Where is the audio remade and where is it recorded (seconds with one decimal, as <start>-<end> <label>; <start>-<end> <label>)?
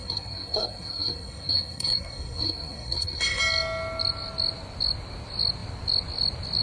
0.0-3.4 remade; 3.4-6.6 recorded